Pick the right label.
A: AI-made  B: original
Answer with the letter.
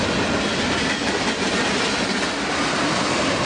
B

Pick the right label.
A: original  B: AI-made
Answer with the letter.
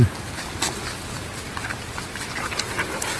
A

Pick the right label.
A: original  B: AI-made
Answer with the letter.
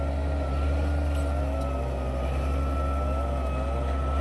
A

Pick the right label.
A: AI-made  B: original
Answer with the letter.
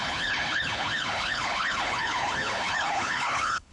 A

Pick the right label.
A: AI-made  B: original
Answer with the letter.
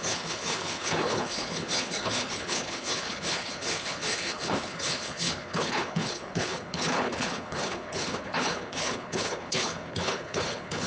A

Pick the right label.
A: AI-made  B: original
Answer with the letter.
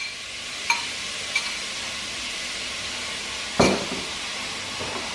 B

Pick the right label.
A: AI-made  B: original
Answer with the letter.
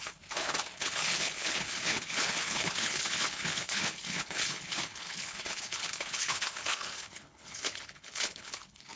A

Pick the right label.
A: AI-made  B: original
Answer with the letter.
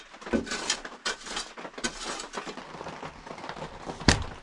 B